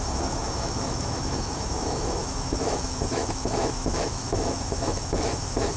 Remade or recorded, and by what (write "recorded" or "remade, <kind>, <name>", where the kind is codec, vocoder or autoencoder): remade, autoencoder, DAC-VAE